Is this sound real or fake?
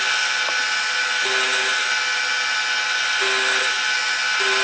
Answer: real